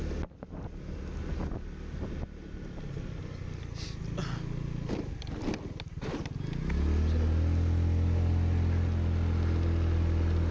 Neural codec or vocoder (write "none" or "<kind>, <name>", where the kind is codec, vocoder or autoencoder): none